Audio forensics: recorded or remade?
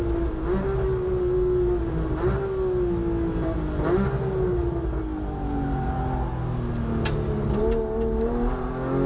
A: recorded